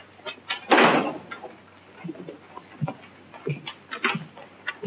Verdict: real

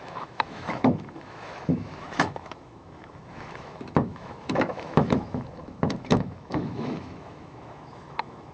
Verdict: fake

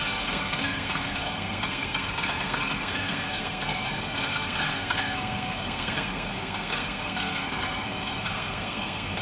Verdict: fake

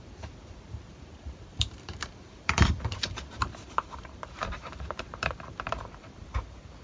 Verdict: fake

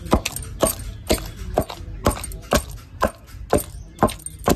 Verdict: real